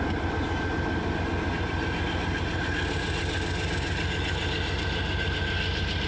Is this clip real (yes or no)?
yes